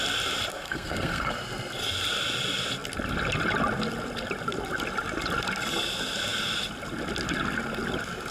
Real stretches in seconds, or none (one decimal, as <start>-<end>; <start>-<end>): 0.0-0.5; 1.3-8.3